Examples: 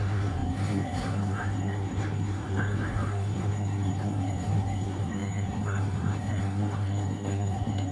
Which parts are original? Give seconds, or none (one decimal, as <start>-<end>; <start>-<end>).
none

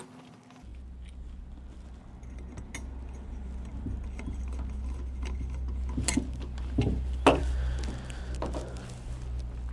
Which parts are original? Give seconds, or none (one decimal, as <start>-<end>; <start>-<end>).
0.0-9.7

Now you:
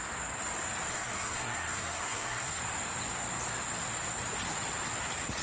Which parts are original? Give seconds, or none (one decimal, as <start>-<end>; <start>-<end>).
0.0-0.9; 2.6-5.4

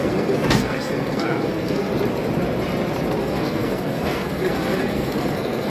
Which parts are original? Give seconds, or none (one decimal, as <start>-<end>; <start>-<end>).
1.9-3.2

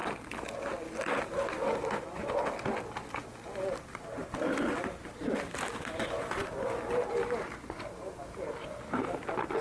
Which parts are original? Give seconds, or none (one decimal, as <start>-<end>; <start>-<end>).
0.0-9.6